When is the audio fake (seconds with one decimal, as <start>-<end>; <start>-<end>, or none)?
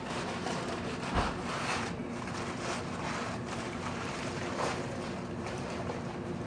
0.0-2.0; 3.3-6.5